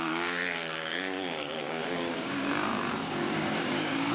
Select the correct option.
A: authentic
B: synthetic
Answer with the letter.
B